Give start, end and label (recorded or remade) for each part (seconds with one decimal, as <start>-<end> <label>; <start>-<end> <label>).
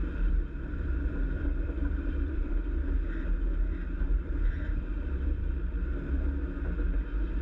0.0-2.5 remade; 2.5-4.1 recorded; 4.1-5.5 remade; 5.5-7.4 recorded